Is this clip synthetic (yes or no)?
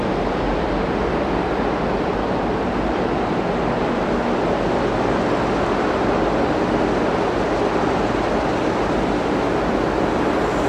no